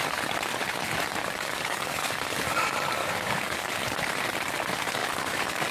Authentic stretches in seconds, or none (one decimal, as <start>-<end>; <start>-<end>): 0.0-1.2; 2.1-3.0; 3.7-5.0